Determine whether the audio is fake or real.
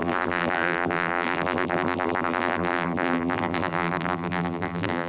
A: fake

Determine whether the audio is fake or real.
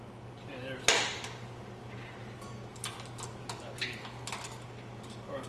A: real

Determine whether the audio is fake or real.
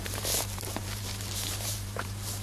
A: fake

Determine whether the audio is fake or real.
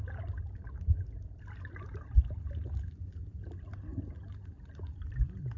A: real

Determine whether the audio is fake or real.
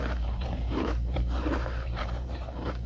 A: fake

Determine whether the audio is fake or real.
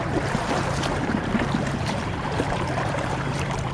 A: fake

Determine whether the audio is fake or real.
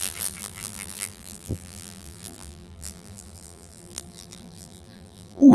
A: fake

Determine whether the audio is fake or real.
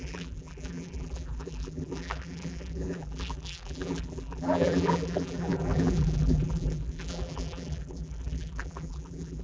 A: fake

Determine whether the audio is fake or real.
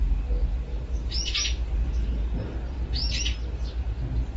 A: real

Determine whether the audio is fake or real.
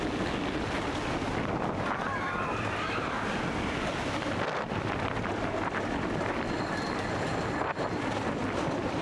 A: real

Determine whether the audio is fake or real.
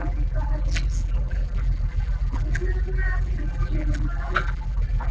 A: fake